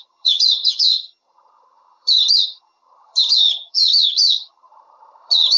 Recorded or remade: remade